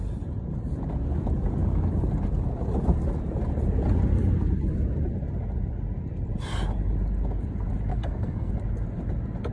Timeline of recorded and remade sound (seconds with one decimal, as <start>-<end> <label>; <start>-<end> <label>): 0.0-7.9 recorded; 7.9-8.5 remade; 8.5-9.5 recorded